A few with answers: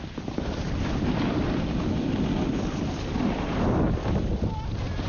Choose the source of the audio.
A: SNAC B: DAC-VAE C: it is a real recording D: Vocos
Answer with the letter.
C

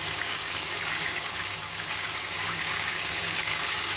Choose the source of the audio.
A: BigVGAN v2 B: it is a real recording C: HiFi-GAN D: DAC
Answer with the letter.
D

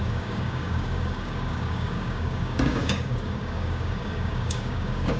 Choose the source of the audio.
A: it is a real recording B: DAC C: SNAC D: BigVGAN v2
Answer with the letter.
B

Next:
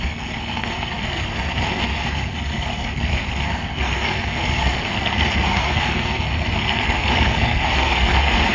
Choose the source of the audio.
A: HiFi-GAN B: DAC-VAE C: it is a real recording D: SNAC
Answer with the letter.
D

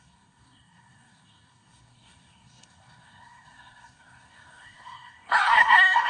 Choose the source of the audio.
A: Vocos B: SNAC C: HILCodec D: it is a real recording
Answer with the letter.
B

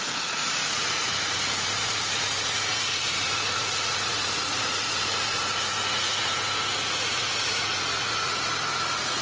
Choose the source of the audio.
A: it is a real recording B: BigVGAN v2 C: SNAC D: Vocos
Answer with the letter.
D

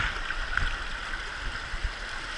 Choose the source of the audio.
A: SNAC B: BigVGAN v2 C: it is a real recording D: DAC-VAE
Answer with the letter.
C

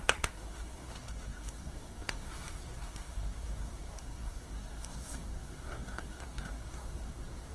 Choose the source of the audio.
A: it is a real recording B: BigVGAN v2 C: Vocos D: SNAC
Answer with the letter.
D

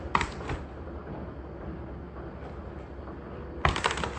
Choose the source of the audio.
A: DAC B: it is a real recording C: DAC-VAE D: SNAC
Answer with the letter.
B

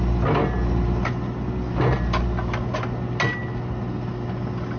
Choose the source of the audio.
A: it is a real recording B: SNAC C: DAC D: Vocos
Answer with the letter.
A